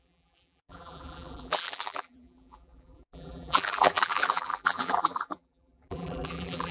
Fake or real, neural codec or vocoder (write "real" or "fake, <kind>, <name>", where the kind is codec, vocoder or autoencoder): fake, vocoder, BigVGAN v2